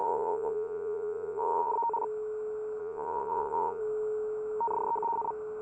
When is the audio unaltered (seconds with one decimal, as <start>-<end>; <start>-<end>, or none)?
1.7-2.8; 3.8-5.6